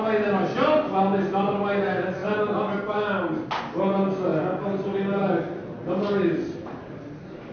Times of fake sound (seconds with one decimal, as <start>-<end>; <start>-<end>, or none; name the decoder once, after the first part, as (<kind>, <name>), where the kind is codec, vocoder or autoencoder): none